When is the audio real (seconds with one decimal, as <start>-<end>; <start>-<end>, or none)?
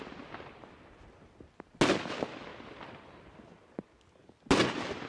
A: 0.0-5.1